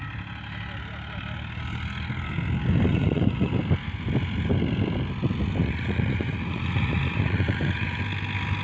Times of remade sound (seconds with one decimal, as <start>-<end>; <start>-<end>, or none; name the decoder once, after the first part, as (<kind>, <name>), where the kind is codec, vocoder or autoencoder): 2.9-3.5 (vocoder, Vocos); 5.6-8.0